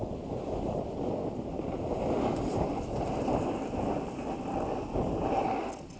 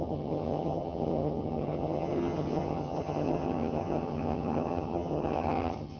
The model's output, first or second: second